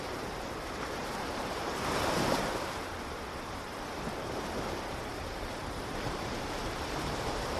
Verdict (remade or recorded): remade